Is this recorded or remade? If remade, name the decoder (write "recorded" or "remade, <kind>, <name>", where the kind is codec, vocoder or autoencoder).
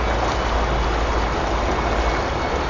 recorded